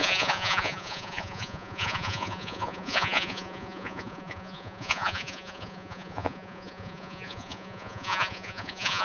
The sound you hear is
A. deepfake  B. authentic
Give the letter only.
A